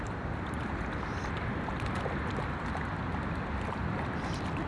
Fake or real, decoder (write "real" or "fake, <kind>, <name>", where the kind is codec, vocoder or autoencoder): real